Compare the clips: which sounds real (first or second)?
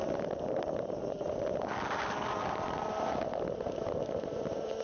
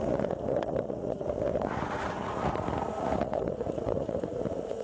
first